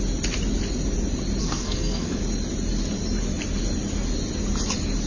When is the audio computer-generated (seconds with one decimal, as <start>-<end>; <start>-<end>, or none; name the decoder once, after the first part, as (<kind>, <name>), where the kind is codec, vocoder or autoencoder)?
1.4-2.2 (codec, SNAC)